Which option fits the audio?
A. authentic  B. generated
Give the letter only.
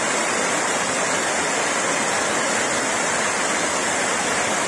A